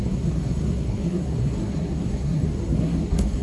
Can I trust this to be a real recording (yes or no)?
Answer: no